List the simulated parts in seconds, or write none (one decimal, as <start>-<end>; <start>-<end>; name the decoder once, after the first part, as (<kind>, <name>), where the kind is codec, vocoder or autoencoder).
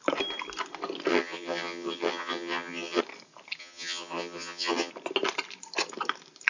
1.1-3.0 (vocoder, HiFi-GAN); 3.6-4.9